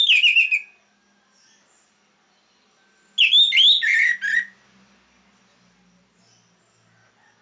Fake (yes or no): no